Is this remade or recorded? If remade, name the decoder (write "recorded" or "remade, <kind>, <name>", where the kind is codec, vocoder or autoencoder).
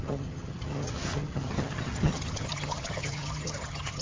remade, vocoder, HiFi-GAN